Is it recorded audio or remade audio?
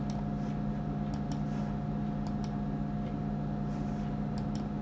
recorded